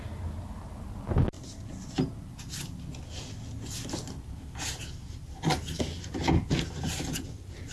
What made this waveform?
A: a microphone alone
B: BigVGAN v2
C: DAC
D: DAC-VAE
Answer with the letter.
A